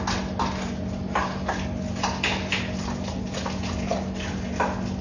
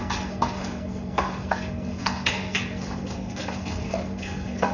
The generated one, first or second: second